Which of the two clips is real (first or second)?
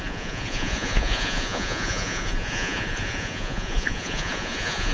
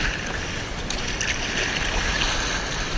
second